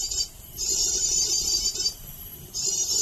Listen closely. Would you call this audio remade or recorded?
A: remade